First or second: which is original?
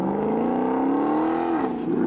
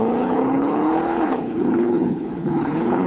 first